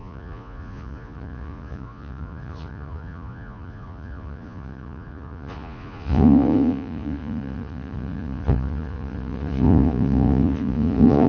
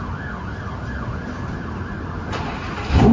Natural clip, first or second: second